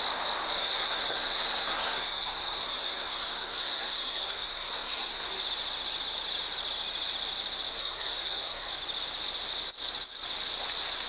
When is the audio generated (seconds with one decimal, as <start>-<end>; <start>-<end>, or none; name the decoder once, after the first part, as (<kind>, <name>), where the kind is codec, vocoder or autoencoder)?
0.6-5.3 (codec, SNAC); 7.7-8.7